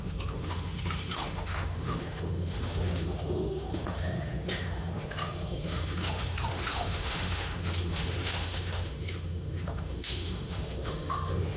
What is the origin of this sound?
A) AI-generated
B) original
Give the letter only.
A